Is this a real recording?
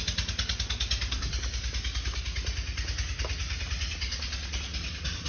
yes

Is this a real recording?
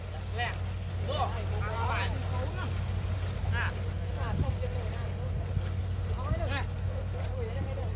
yes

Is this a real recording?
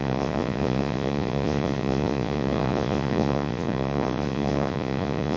no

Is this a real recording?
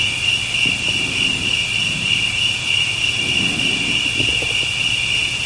yes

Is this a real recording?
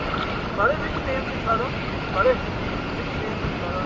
yes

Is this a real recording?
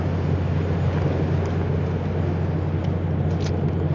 yes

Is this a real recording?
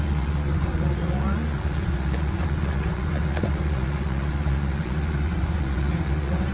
no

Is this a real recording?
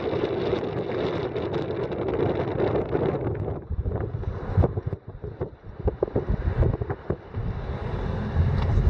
yes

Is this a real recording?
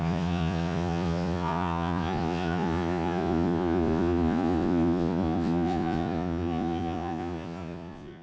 no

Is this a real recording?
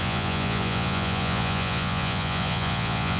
no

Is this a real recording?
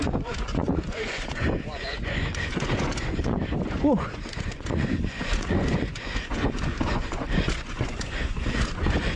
no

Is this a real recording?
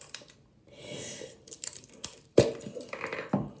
yes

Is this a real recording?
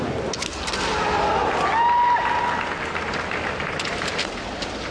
yes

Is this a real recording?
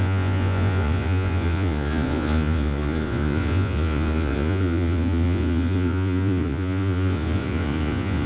no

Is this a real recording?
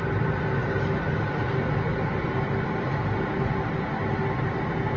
yes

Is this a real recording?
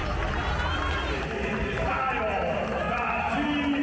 yes